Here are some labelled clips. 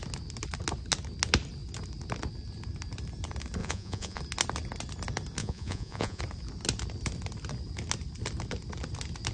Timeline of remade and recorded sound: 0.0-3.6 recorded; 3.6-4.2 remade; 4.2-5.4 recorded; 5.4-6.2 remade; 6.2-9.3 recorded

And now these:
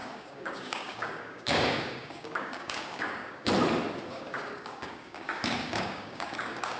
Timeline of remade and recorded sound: 0.0-3.5 remade; 3.5-4.1 recorded; 4.1-6.8 remade

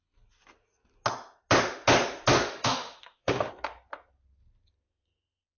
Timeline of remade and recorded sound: 0.0-2.3 recorded; 2.3-3.5 remade; 3.5-5.6 recorded